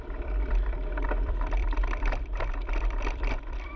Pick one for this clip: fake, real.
fake